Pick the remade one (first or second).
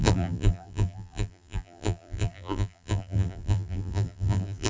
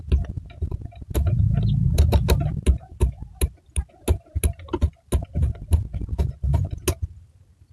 first